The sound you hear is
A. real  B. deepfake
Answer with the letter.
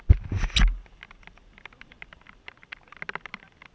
A